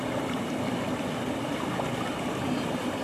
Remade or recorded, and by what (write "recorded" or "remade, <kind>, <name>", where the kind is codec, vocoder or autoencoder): recorded